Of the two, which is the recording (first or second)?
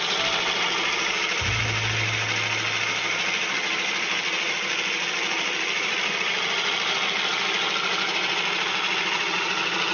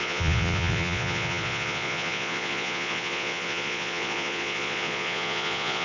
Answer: first